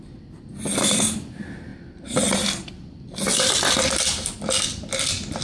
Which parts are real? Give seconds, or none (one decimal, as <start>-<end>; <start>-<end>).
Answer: 0.0-5.4